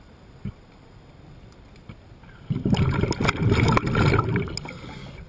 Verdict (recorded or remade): recorded